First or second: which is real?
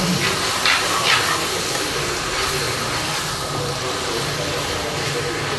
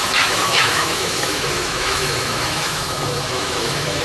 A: first